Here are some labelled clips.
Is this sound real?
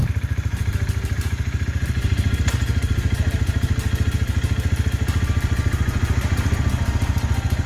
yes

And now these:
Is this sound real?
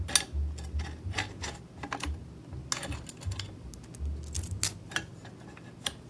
yes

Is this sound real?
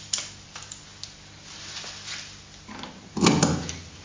yes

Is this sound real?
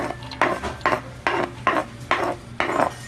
yes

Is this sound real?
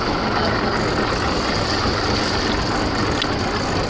yes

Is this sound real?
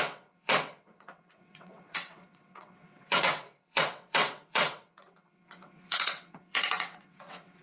no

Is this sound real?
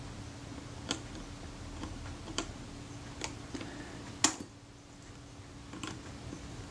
yes